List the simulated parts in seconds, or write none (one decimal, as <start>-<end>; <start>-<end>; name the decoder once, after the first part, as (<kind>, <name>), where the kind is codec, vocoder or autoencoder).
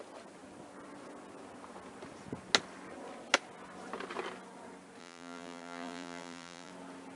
5.0-6.7 (vocoder, BigVGAN v2)